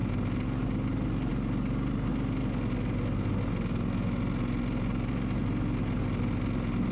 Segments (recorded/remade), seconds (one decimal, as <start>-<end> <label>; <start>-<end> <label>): 0.0-6.9 recorded